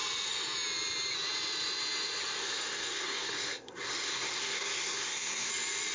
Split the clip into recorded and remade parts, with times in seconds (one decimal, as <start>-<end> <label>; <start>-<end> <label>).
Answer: 0.0-2.4 recorded; 2.4-5.5 remade; 5.5-5.9 recorded